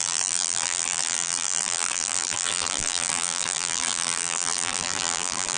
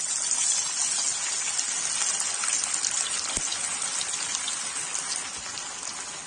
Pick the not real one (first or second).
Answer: first